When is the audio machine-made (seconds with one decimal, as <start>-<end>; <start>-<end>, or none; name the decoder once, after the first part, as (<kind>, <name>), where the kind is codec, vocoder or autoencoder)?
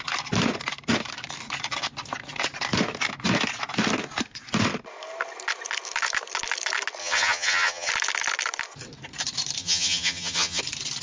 7.0-7.9 (vocoder, HiFi-GAN); 9.6-10.6